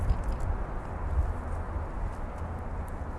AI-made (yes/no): no